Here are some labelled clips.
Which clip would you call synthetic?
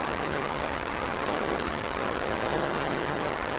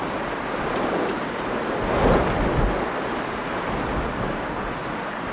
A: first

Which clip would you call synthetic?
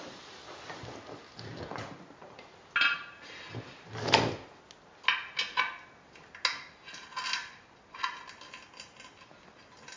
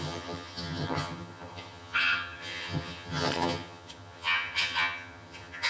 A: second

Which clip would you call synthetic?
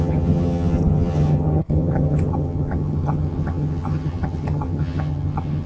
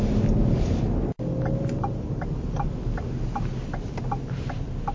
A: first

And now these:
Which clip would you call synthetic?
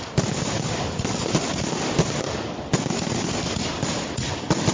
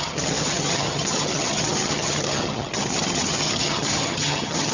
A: second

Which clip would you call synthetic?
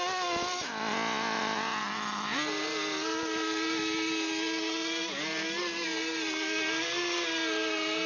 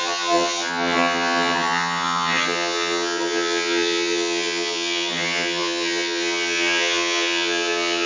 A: second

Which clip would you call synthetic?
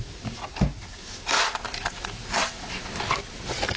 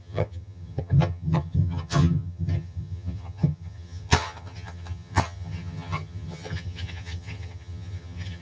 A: second